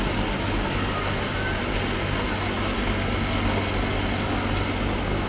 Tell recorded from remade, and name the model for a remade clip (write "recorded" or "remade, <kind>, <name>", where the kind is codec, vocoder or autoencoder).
recorded